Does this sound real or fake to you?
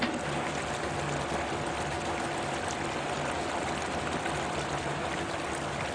real